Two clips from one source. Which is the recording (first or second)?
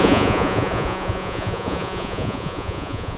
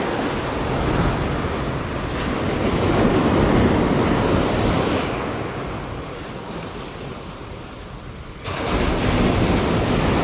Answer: second